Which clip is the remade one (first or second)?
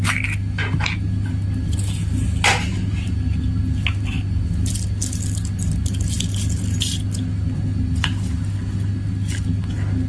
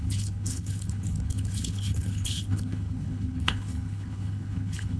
second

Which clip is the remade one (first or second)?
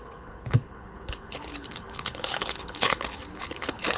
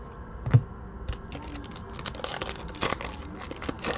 first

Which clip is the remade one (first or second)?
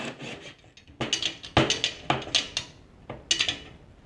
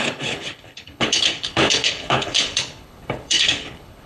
second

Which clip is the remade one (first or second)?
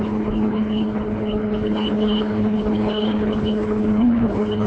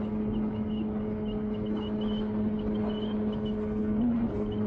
first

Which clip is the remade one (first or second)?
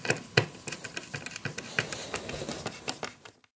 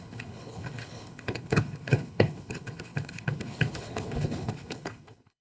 second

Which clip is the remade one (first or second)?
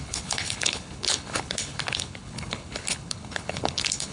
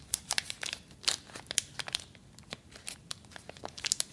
first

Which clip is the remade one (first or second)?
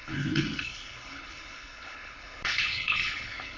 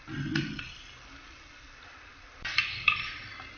first